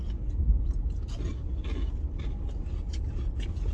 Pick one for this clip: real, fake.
real